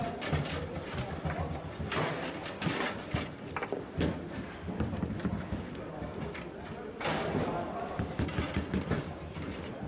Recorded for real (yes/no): yes